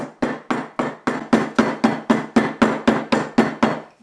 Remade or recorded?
recorded